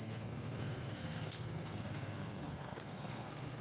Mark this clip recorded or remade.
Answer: remade